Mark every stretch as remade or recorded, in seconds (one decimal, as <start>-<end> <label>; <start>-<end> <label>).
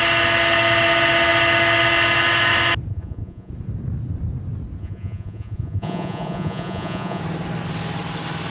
0.0-2.9 recorded; 2.9-3.5 remade; 3.5-4.8 recorded; 4.8-7.2 remade; 7.2-8.5 recorded